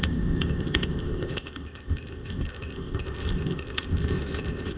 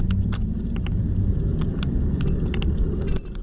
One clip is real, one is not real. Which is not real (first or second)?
first